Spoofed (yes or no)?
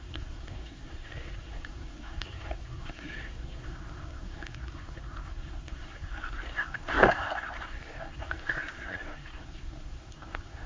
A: yes